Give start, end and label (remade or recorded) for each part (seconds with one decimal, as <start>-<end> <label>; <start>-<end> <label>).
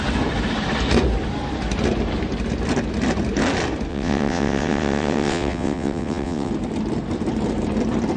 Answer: 0.0-3.9 recorded; 3.9-6.5 remade; 6.5-8.2 recorded